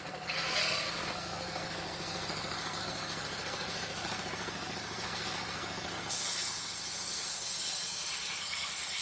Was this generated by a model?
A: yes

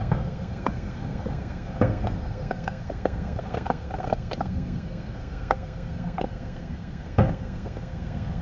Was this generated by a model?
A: yes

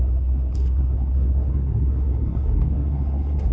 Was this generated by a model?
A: yes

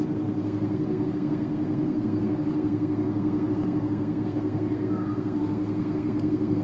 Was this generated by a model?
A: yes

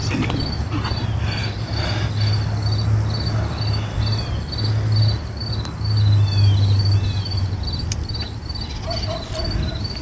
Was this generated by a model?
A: no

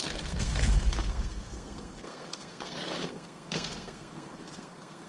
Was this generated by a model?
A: yes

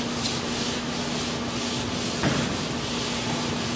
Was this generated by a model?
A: no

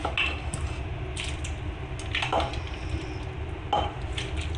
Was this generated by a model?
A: no